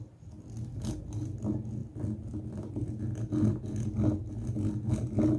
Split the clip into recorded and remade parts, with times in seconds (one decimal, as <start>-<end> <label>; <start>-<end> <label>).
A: 0.0-5.4 recorded